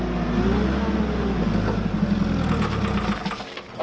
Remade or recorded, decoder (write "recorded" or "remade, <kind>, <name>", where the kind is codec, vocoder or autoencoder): recorded